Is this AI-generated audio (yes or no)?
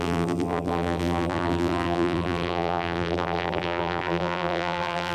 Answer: yes